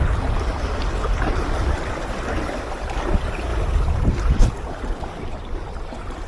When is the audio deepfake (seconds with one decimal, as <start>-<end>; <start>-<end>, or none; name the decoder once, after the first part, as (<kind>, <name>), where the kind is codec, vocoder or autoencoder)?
none